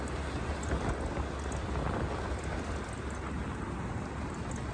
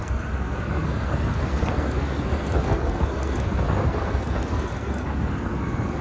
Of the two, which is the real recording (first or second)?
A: first